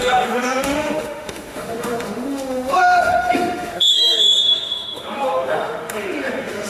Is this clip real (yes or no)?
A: no